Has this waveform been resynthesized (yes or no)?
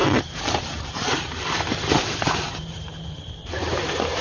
yes